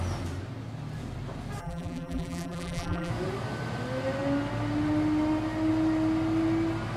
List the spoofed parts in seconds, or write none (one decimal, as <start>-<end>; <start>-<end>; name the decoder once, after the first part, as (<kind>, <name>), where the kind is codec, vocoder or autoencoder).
1.6-3.1 (vocoder, BigVGAN v2)